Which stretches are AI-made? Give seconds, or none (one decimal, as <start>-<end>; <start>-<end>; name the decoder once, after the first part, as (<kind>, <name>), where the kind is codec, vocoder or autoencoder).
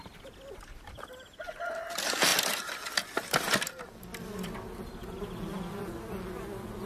none